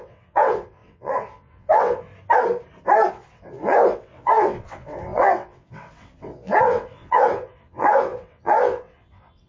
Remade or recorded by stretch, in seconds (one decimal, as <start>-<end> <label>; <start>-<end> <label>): 0.0-2.1 remade; 2.1-3.1 recorded; 3.1-9.5 remade